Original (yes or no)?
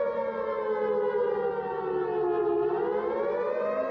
yes